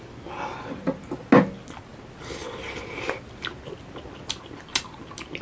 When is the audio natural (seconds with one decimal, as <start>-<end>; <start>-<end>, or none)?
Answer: 0.0-5.4